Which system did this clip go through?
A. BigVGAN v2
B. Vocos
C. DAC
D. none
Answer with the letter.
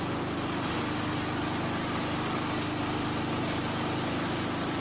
D